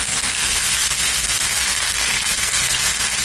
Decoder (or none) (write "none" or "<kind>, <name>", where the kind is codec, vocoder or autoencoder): codec, SNAC